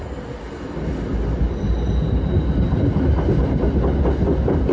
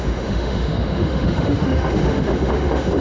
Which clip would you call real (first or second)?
first